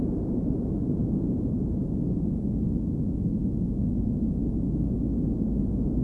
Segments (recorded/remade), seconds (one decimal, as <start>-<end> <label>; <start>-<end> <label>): 0.0-6.0 recorded